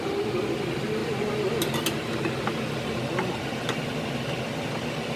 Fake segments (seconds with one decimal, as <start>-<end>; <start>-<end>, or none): none